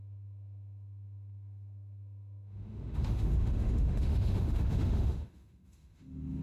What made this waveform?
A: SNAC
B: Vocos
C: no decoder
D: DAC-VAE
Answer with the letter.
D